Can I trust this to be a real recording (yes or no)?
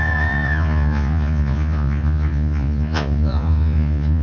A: no